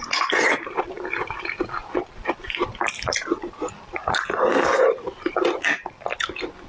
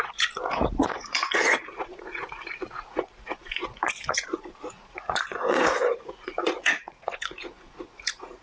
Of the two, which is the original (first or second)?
first